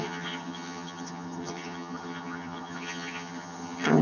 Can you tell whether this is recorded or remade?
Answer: remade